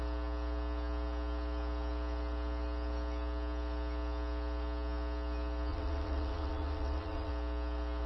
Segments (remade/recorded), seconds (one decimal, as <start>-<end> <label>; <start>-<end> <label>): 0.0-5.7 recorded; 5.7-7.3 remade; 7.3-8.1 recorded